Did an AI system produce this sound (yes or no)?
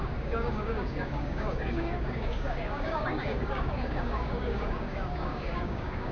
yes